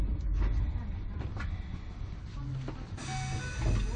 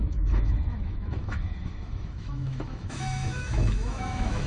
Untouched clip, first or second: first